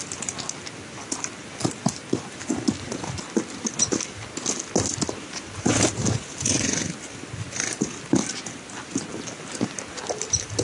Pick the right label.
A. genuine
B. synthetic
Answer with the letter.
A